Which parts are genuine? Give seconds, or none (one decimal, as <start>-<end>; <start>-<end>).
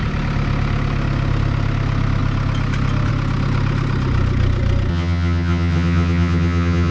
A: 0.0-4.9